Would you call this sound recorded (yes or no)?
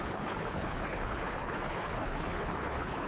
no